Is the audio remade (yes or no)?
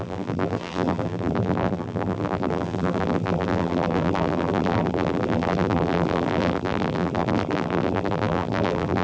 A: yes